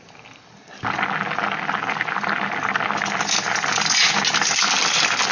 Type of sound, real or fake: real